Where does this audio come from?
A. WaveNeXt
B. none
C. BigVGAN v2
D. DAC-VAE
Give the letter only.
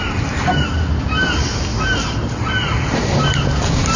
B